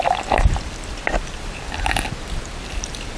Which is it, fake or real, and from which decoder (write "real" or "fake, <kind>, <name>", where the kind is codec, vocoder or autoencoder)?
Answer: fake, vocoder, BigVGAN v2